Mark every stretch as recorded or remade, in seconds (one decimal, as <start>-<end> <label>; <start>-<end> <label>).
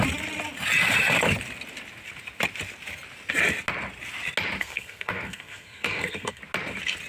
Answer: 0.0-4.6 recorded; 4.6-6.4 remade; 6.4-7.1 recorded